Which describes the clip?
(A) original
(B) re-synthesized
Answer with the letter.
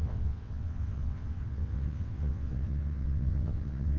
B